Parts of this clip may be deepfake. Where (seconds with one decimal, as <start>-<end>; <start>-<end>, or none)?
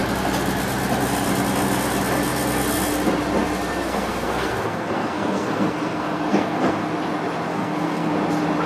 3.8-6.9; 7.5-8.1